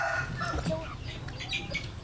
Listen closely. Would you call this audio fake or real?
real